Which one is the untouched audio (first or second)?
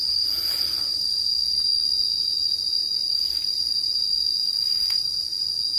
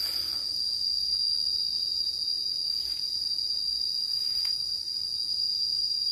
second